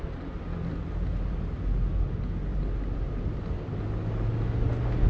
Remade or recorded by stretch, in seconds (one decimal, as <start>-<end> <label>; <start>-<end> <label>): 0.0-5.1 recorded